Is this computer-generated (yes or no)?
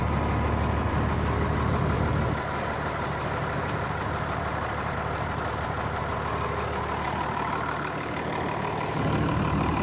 yes